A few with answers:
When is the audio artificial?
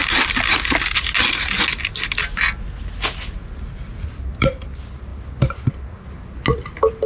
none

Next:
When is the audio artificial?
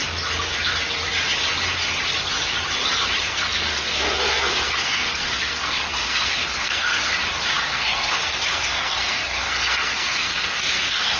3.2-7.1 (codec, SNAC); 7.6-11.2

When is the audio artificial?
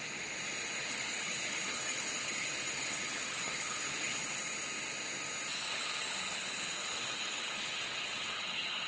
0.8-4.4 (codec, HILCodec); 5.7-8.9